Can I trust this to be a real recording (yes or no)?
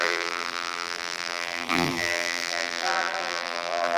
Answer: no